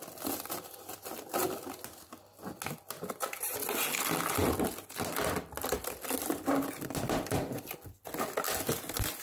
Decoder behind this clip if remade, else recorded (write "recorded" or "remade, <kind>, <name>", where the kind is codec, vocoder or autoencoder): recorded